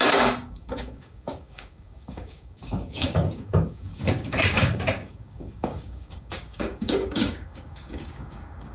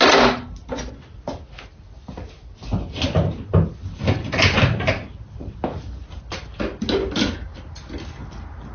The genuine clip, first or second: second